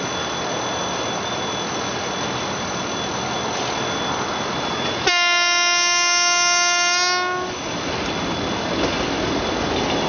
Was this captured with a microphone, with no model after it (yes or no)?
yes